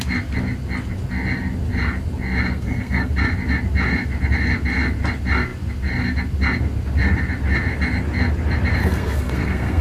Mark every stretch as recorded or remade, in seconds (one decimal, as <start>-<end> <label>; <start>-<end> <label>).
0.0-2.5 recorded; 2.5-3.1 remade; 3.1-8.8 recorded; 8.8-9.8 remade